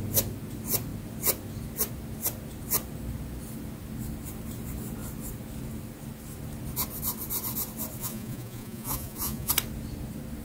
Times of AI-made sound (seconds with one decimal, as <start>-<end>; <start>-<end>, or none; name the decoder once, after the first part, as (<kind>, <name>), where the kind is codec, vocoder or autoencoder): 8.0-9.5 (vocoder, Vocos)